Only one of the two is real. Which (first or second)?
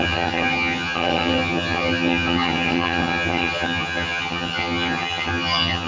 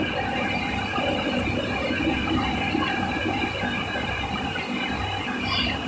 second